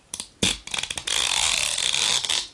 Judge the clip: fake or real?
real